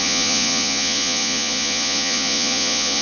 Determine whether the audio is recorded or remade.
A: remade